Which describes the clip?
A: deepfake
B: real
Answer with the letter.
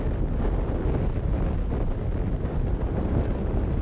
B